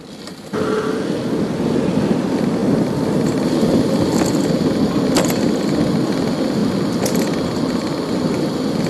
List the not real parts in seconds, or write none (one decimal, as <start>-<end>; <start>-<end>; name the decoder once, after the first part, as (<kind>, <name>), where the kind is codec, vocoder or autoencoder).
2.6-4.5 (vocoder, BigVGAN v2)